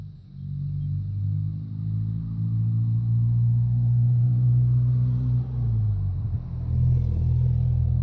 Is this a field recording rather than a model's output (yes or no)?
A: yes